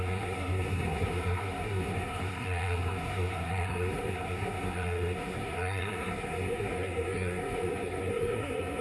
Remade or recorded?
remade